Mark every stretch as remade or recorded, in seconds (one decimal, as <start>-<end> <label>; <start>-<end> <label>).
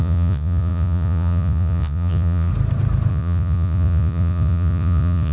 0.0-2.5 remade; 2.5-3.1 recorded; 3.1-5.3 remade